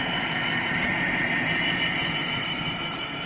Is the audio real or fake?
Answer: real